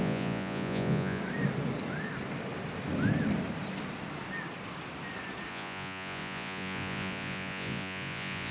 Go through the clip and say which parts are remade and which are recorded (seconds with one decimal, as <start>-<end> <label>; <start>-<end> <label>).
0.0-1.2 remade; 1.2-5.5 recorded; 5.5-8.5 remade